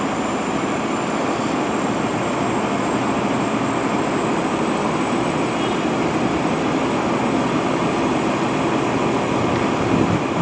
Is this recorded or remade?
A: recorded